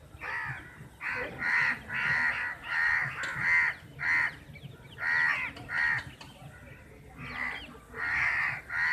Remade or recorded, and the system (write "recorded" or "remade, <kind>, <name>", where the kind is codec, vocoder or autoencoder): recorded